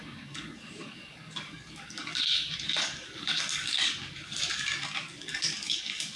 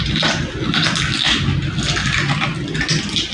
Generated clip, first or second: first